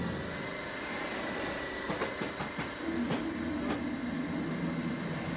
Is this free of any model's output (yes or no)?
yes